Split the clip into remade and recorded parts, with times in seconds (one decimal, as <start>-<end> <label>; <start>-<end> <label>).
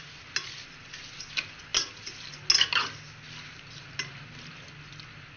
0.0-5.4 recorded